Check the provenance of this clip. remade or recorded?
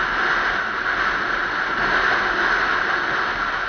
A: recorded